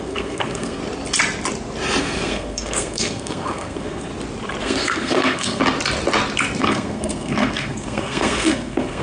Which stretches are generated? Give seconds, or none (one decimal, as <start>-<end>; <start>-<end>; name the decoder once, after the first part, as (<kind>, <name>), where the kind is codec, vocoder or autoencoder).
0.0-0.8 (codec, SNAC); 2.0-4.1; 4.6-5.6; 6.6-9.0